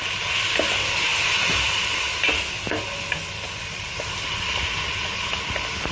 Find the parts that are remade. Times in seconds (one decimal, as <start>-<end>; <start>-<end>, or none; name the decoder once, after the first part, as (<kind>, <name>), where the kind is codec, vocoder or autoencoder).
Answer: none